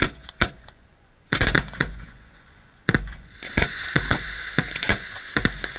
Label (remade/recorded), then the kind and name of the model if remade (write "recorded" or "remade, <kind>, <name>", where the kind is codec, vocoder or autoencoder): remade, vocoder, Vocos